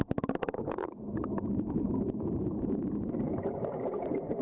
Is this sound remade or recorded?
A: remade